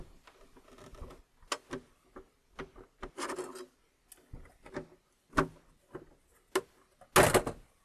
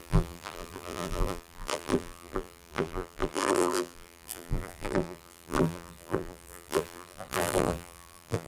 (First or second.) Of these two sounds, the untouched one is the first